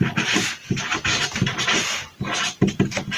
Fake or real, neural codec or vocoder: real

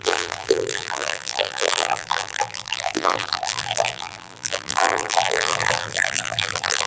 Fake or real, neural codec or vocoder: fake, vocoder, BigVGAN v2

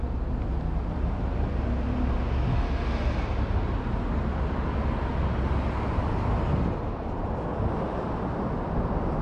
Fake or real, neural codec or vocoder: real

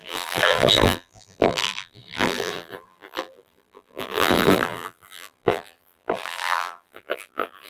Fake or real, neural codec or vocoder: fake, vocoder, BigVGAN v2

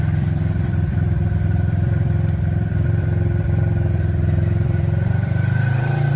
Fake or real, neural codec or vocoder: fake, vocoder, BigVGAN v2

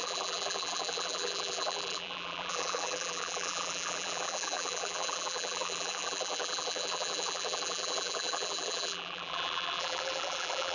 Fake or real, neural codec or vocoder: fake, vocoder, BigVGAN v2